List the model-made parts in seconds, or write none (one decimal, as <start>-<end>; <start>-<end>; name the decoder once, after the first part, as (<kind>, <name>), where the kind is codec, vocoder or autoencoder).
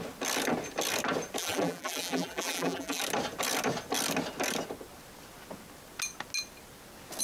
1.4-3.0 (vocoder, BigVGAN v2)